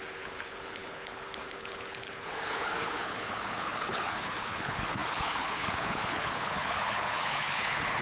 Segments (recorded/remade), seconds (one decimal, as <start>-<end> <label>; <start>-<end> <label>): 0.0-8.0 remade